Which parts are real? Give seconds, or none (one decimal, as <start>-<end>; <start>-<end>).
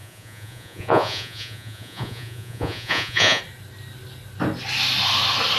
3.4-5.6